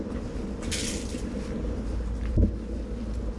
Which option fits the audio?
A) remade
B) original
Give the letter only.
B